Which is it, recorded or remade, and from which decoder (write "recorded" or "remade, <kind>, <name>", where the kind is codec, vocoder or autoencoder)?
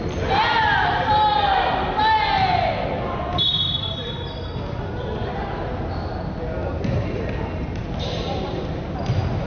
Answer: recorded